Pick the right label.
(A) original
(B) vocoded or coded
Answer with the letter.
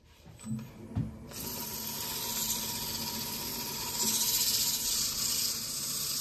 A